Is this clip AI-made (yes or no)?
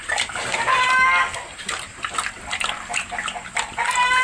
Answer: no